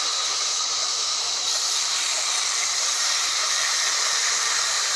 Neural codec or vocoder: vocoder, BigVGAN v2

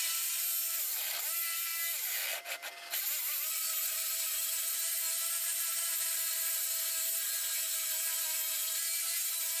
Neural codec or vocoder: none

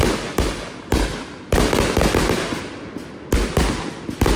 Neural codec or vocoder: none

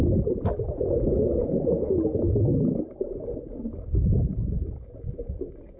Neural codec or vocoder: none